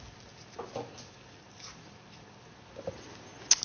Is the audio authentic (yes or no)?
yes